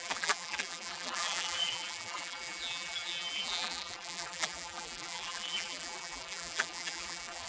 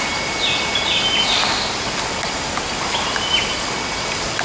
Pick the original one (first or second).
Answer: second